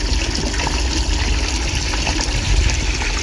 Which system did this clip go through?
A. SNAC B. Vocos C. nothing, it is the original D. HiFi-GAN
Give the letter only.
C